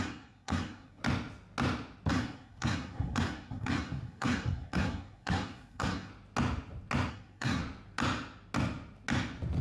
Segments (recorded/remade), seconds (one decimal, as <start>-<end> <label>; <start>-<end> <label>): 0.0-1.0 remade; 1.0-2.1 recorded; 2.1-6.1 remade; 6.1-7.1 recorded; 7.1-7.6 remade; 7.6-9.6 recorded